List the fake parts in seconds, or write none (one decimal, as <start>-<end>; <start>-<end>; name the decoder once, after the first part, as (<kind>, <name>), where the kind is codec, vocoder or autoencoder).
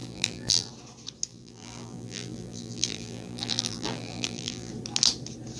0.0-0.7 (vocoder, BigVGAN v2); 1.3-4.7